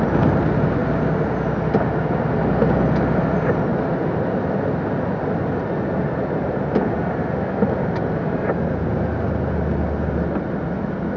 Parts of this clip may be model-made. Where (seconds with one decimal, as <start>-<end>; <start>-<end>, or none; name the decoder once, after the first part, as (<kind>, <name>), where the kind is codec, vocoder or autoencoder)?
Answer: none